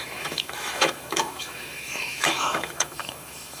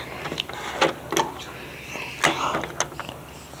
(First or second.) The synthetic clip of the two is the first